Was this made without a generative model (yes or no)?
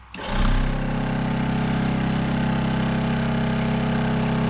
yes